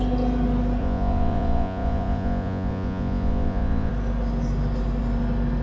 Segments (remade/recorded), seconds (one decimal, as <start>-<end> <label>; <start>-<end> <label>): 0.0-0.8 recorded; 0.8-3.9 remade; 3.9-5.6 recorded